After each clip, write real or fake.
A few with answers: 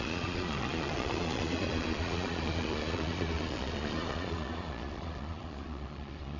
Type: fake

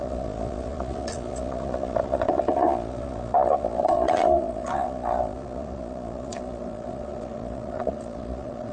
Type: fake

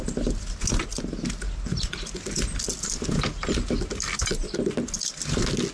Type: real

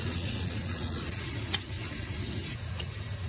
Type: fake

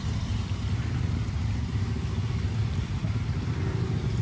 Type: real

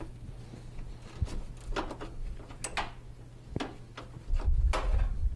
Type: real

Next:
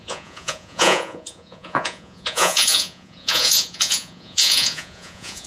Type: fake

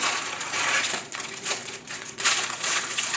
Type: fake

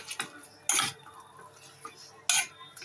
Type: real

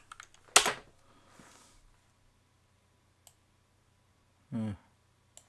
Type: real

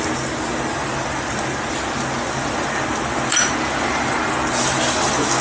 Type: real